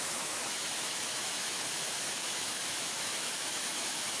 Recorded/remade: remade